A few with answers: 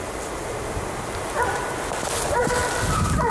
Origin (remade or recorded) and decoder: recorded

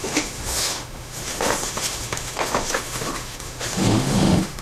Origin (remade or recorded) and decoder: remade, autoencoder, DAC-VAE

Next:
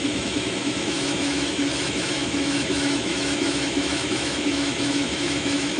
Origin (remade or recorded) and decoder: remade, autoencoder, DAC-VAE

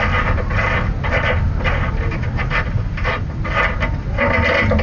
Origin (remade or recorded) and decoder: recorded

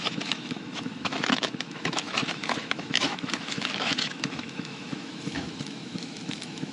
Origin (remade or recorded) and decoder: remade, autoencoder, DAC-VAE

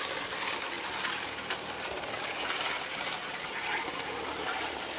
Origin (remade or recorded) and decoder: recorded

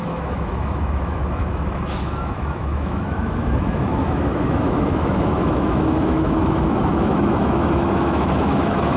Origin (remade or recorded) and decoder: remade, autoencoder, DAC-VAE